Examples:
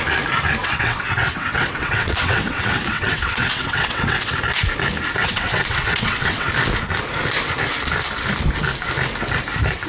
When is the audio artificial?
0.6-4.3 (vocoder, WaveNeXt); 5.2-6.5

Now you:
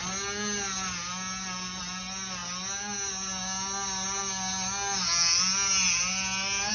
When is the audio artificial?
none

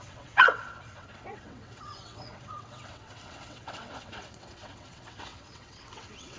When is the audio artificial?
0.0-6.4 (vocoder, WaveNeXt)

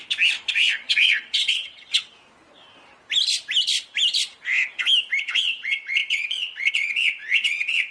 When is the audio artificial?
0.5-2.0 (vocoder, WaveNeXt); 5.2-7.9

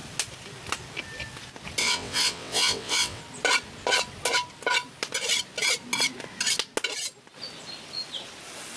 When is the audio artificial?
1.8-3.2 (vocoder, WaveNeXt)

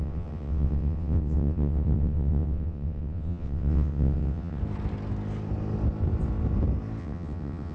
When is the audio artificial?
0.0-4.6 (vocoder, WaveNeXt); 7.0-7.7

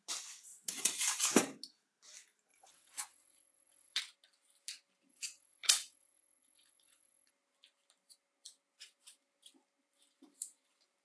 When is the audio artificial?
2.5-4.0 (vocoder, WaveNeXt); 5.1-7.3